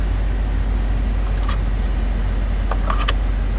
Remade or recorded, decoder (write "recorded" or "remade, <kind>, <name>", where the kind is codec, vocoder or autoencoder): recorded